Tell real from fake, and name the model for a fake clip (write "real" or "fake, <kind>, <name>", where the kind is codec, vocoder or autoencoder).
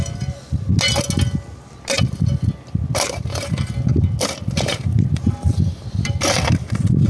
real